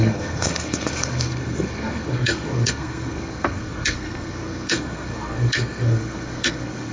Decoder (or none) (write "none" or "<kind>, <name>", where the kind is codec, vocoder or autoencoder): codec, SNAC